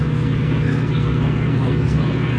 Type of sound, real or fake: fake